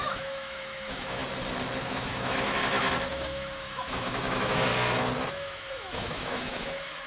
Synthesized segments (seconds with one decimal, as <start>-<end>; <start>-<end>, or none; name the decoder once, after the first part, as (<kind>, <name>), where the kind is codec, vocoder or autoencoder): 0.0-1.2 (autoencoder, DAC-VAE); 1.8-2.5; 3.1-4.7; 5.3-7.1